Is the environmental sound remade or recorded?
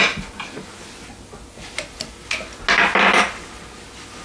recorded